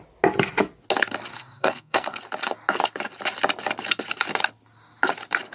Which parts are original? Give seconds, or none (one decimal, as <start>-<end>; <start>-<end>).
0.0-1.3; 2.2-5.5